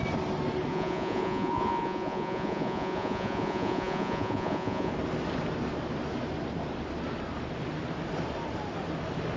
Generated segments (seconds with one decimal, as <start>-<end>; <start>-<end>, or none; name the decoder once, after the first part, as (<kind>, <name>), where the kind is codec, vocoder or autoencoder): 0.7-4.9 (vocoder, Vocos)